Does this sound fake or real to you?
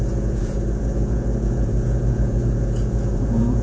fake